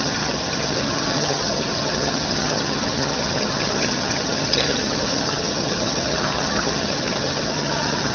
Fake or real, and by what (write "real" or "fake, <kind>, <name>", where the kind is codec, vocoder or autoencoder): fake, vocoder, HiFi-GAN